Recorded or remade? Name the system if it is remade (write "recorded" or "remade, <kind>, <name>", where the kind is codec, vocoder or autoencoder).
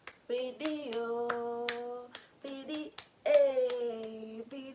recorded